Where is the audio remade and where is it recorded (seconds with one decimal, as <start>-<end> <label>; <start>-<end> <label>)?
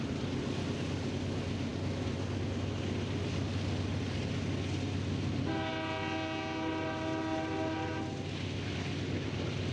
0.0-9.7 recorded